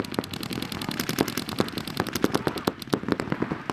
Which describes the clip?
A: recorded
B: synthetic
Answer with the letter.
A